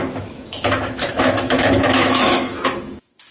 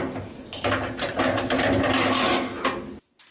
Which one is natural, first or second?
second